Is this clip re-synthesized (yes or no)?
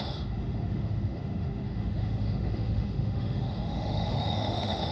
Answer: yes